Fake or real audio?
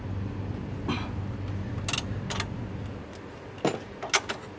real